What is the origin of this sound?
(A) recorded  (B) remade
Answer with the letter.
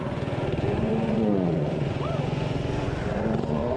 B